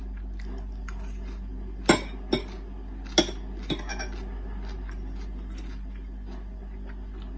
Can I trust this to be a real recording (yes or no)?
yes